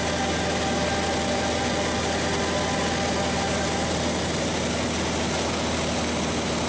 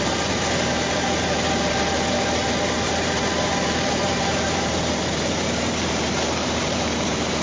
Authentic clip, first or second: first